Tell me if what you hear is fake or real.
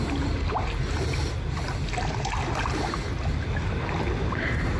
real